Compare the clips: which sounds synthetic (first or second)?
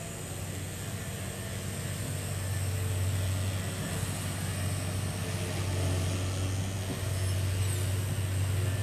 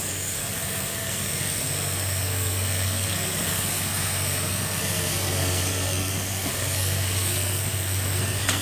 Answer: second